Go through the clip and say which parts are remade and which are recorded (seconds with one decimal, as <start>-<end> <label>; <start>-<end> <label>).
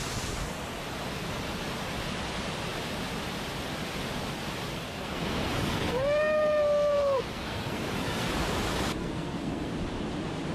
0.0-4.7 recorded; 4.7-8.3 remade; 8.3-9.0 recorded; 9.0-9.7 remade; 9.7-10.5 recorded